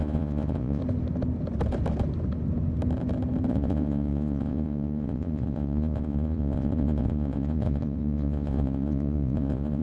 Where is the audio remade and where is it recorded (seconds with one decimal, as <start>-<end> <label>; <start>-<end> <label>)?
0.0-0.8 remade; 0.8-3.5 recorded; 3.5-9.8 remade